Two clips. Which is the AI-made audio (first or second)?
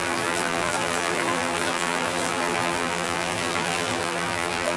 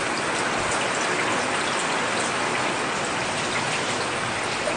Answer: first